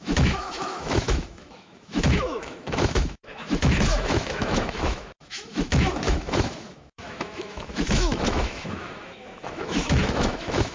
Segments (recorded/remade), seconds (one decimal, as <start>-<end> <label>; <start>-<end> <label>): 0.0-10.7 remade